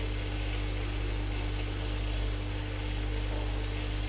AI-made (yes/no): no